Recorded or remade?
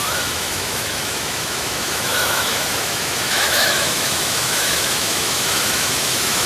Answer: remade